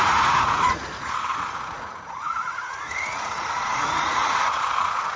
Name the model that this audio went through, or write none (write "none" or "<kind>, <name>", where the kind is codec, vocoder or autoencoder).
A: vocoder, Vocos